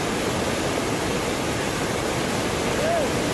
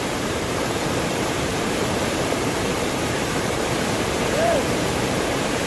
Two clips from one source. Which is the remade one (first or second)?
second